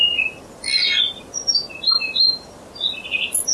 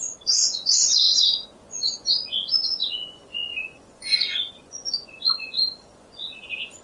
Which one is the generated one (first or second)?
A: second